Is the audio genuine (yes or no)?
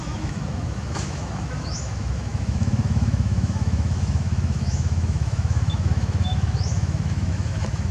no